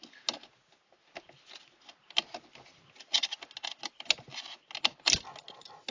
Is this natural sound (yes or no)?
yes